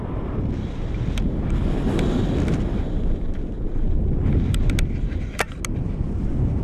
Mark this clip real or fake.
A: real